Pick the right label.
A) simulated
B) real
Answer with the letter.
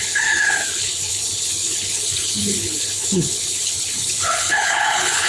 A